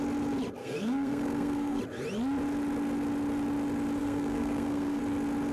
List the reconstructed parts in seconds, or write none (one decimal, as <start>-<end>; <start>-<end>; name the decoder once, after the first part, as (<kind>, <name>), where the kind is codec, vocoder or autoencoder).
0.6-1.8 (codec, SNAC); 4.0-5.0